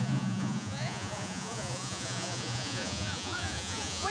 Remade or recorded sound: remade